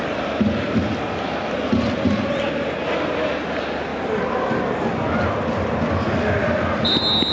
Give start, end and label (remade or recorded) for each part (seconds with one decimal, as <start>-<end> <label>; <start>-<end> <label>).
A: 0.0-7.3 recorded